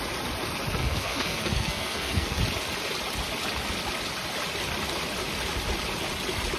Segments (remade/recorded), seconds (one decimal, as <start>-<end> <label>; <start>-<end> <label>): 0.0-0.8 recorded; 0.8-2.4 remade; 2.4-6.6 recorded